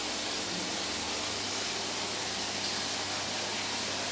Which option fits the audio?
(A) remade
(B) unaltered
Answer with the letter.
B